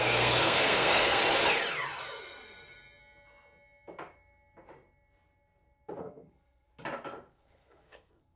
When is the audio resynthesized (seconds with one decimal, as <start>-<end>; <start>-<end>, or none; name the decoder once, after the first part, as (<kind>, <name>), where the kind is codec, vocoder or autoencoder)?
0.0-1.2 (codec, SNAC); 6.0-6.7; 7.3-8.4